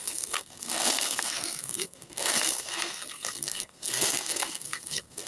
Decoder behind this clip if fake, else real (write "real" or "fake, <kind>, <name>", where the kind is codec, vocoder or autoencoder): fake, codec, SNAC